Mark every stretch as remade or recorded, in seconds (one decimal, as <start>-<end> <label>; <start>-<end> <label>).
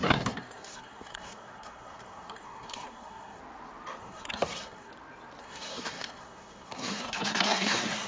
0.0-3.4 remade; 3.4-4.0 recorded; 4.0-4.9 remade; 4.9-5.4 recorded; 5.4-8.1 remade